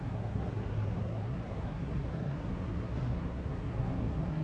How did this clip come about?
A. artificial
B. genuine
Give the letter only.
A